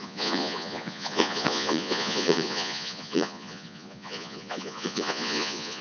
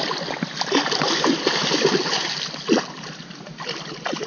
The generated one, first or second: first